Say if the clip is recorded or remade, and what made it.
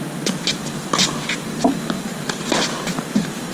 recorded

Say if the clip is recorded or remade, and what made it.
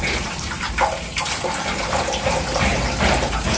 remade, vocoder, BigVGAN v2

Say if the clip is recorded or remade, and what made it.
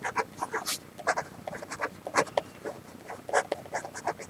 recorded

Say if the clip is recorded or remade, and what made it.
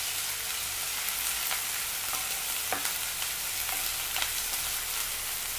recorded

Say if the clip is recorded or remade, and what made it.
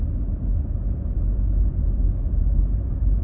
remade, vocoder, BigVGAN v2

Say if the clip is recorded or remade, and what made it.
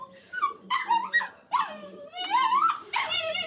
remade, vocoder, BigVGAN v2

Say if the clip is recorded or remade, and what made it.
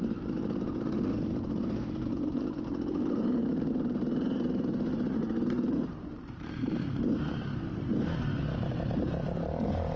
remade, vocoder, BigVGAN v2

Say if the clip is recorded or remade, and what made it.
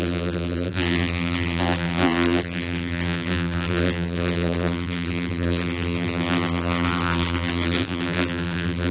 remade, vocoder, BigVGAN v2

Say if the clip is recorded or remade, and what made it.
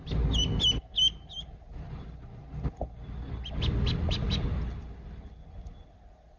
recorded